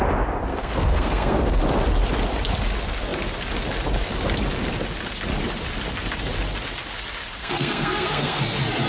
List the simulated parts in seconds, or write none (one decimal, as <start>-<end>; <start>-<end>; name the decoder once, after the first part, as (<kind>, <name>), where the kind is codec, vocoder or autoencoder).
0.5-1.6 (codec, SNAC); 7.4-8.4